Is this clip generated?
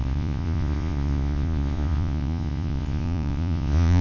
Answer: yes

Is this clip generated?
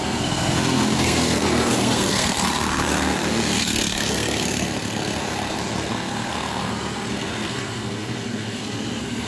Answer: yes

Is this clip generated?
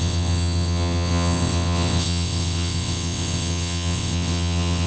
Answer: yes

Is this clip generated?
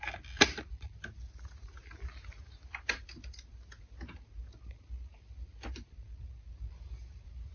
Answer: no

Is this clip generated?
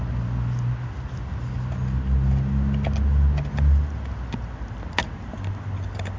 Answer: no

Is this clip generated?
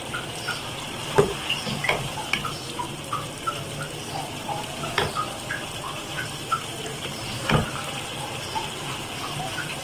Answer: yes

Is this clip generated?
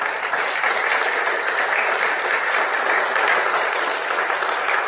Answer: no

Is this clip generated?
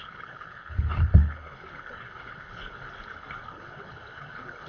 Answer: yes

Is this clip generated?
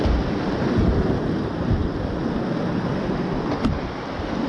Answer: no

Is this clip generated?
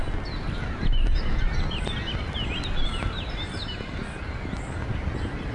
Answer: no